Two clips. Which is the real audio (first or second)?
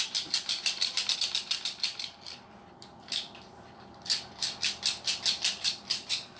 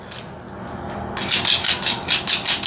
second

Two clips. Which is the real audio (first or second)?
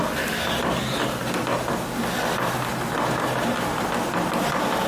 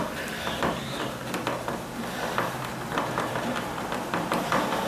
first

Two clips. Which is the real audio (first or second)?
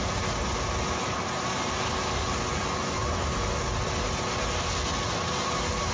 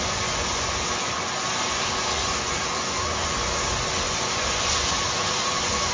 first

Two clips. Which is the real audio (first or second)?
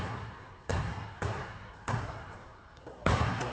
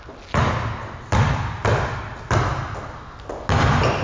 second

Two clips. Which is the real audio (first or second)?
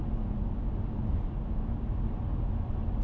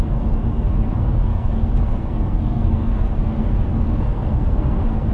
first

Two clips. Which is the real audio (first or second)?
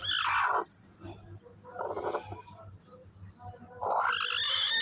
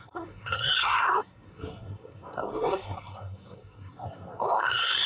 first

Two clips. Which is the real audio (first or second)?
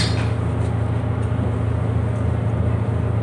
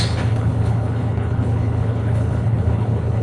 first